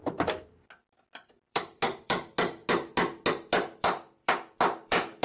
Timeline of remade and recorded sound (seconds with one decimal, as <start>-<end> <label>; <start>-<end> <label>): 0.0-1.5 recorded; 1.5-2.6 remade; 2.6-3.3 recorded; 3.3-5.2 remade